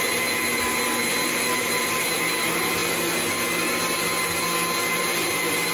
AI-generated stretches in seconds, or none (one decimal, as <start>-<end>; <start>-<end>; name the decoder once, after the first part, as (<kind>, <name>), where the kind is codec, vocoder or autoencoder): 1.1-2.2 (vocoder, BigVGAN v2)